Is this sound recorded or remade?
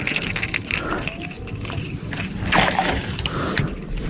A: recorded